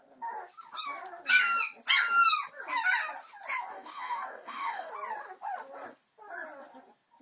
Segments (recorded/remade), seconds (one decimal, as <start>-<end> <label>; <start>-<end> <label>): 0.0-3.7 recorded; 3.7-4.9 remade; 4.9-7.2 recorded